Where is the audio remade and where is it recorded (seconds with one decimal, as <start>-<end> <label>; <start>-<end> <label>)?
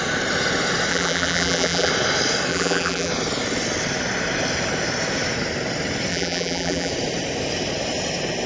0.0-0.9 recorded; 0.9-1.9 remade; 1.9-2.5 recorded; 2.5-3.1 remade; 3.1-6.1 recorded; 6.1-6.9 remade; 6.9-8.5 recorded